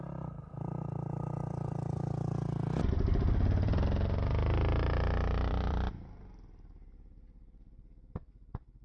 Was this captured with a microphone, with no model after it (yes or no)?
no